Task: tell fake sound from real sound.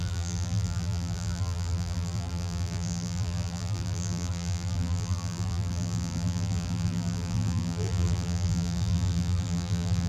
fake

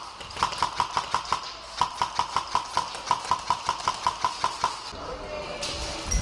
real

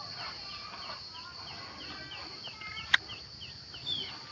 real